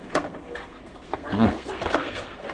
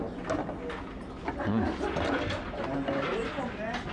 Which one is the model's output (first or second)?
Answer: first